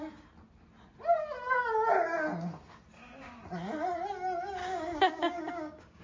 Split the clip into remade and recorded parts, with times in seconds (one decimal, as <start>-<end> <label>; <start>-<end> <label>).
0.0-4.6 recorded; 4.6-6.0 remade